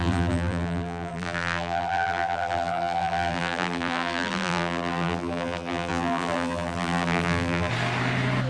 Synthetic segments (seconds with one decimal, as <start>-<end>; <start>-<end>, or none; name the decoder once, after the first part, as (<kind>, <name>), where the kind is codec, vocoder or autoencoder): 0.0-7.7 (vocoder, BigVGAN v2)